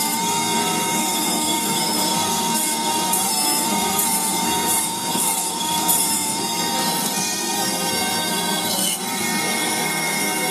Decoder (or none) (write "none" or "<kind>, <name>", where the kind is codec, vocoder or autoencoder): codec, SNAC